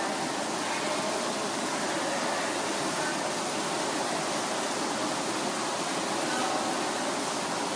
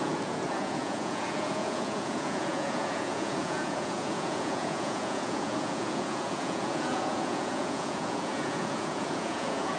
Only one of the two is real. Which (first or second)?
first